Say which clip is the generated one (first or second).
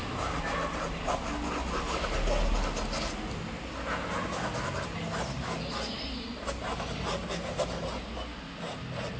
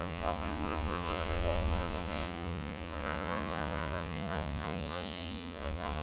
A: second